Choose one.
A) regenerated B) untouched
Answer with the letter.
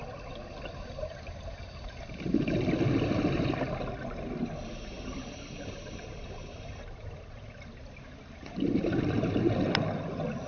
B